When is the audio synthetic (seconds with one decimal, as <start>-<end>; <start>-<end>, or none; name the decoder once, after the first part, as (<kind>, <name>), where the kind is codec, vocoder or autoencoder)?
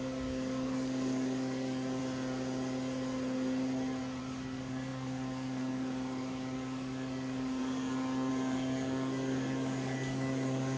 0.0-2.0 (codec, DAC); 4.2-10.8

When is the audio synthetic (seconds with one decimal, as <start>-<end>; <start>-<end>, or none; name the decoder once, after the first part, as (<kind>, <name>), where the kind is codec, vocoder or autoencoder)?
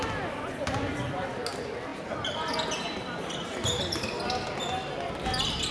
none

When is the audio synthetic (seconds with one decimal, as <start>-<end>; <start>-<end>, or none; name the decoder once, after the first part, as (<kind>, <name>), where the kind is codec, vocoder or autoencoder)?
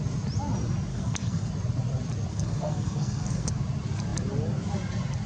0.9-1.5 (codec, SNAC); 2.3-3.5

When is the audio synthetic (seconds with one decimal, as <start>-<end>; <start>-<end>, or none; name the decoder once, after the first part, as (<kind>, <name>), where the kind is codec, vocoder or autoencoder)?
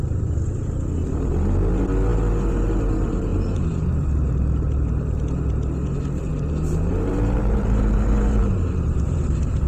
3.3-5.2 (vocoder, BigVGAN v2); 6.3-9.7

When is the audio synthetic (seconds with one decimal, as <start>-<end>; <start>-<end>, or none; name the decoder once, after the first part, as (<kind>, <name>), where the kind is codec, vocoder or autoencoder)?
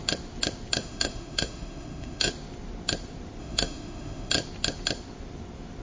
0.8-2.3 (autoencoder, DAC-VAE); 3.4-4.3